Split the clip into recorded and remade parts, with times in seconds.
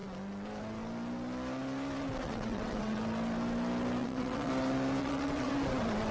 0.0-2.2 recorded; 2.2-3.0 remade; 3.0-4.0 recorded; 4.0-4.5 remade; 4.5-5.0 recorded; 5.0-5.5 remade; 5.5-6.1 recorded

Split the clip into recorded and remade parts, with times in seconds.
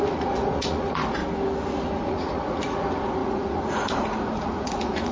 0.0-1.2 remade; 1.2-2.0 recorded; 2.0-5.1 remade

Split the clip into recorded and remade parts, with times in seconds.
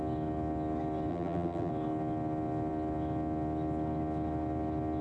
0.0-1.1 recorded; 1.1-1.7 remade; 1.7-5.0 recorded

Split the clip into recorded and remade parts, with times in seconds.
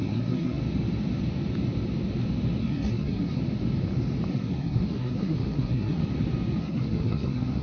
0.0-0.6 remade; 0.6-2.6 recorded; 2.6-3.4 remade; 3.4-4.3 recorded; 4.3-6.0 remade; 6.0-6.6 recorded; 6.6-7.6 remade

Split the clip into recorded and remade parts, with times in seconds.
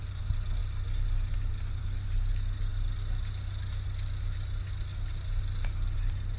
0.0-6.4 recorded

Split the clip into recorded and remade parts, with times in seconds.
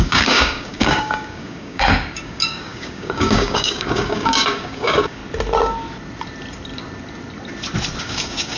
0.0-5.2 remade; 5.2-8.0 recorded; 8.0-8.6 remade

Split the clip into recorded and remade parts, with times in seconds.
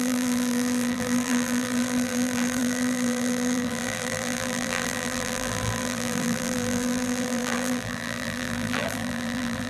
0.0-9.7 remade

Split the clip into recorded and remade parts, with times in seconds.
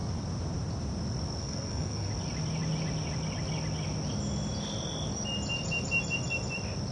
0.0-1.4 recorded; 1.4-2.1 remade; 2.1-6.9 recorded